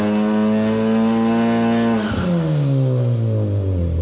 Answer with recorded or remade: recorded